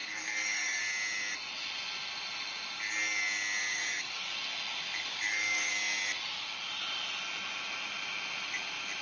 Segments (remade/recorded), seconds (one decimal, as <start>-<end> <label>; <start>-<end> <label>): 0.0-0.8 remade; 0.8-3.7 recorded; 3.7-4.3 remade; 4.3-5.1 recorded; 5.1-5.7 remade; 5.7-9.0 recorded

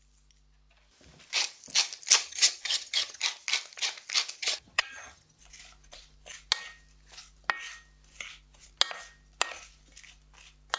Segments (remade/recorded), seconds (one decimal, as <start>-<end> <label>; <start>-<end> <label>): 0.0-2.2 recorded; 2.2-3.2 remade; 3.2-4.4 recorded; 4.4-5.4 remade; 5.4-10.8 recorded

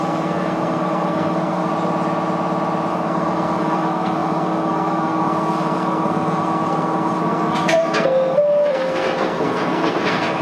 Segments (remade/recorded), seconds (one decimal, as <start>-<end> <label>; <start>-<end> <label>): 0.0-1.7 remade; 1.7-2.9 recorded; 2.9-10.4 remade

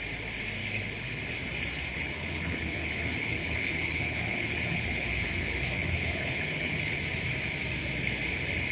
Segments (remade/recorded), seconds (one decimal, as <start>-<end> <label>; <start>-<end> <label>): 0.0-0.6 recorded; 0.6-1.2 remade; 1.2-1.9 recorded; 1.9-7.0 remade; 7.0-8.7 recorded